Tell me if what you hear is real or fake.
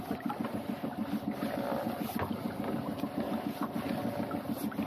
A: real